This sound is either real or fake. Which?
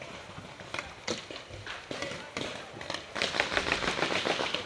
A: real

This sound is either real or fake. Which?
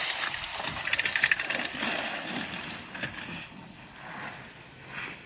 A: real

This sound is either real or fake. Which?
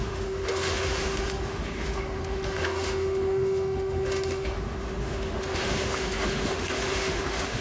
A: fake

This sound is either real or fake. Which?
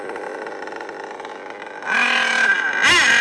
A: real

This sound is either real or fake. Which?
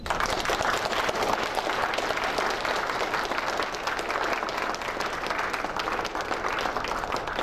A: real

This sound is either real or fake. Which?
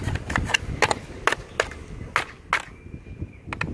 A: real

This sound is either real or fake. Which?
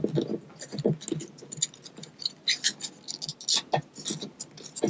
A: real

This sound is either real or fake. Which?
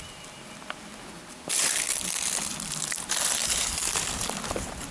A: real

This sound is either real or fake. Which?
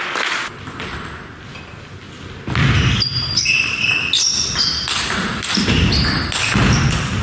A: real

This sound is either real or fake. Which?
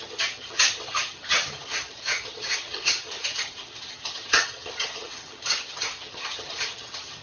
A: fake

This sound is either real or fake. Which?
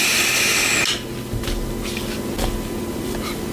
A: real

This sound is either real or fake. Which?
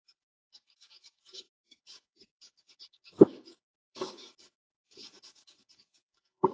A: fake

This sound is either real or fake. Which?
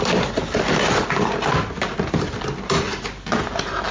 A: real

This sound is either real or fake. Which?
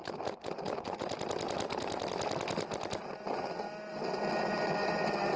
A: real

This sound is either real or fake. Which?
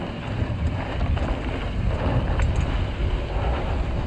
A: real